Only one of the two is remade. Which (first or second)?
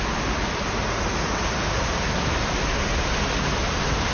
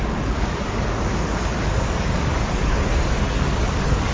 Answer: second